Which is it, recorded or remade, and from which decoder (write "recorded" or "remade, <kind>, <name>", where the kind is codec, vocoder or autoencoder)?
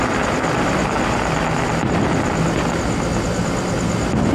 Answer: recorded